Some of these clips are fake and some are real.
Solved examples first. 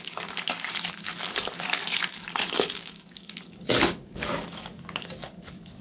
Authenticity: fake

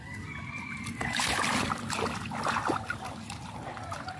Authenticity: real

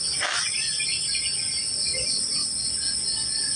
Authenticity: real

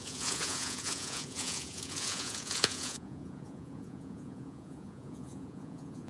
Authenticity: fake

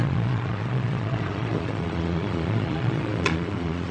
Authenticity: fake